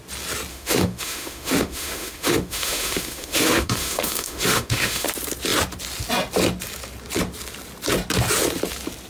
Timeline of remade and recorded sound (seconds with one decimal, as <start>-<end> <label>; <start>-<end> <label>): 0.0-0.5 recorded; 0.5-5.1 remade; 5.1-9.1 recorded